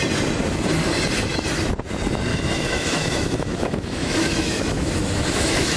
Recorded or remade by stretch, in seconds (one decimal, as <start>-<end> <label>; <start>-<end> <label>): 0.0-2.3 recorded; 2.3-5.8 remade